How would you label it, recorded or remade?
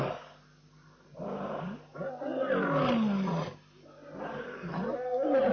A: recorded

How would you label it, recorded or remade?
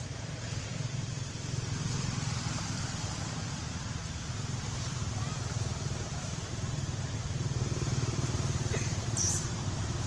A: remade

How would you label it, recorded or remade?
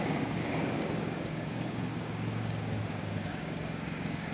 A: remade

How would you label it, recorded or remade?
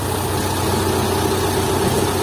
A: recorded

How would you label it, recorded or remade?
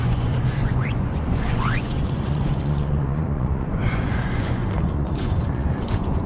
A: remade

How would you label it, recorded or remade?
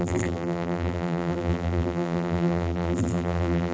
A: remade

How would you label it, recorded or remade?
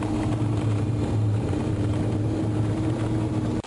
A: remade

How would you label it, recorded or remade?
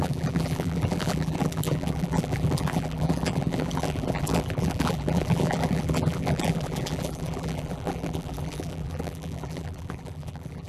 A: remade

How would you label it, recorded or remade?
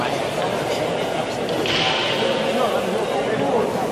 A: recorded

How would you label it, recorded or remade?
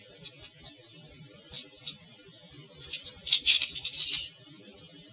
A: remade